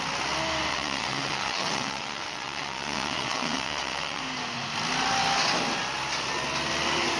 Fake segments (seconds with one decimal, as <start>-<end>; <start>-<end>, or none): 0.7-4.2